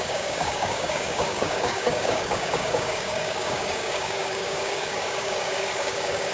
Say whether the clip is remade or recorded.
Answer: remade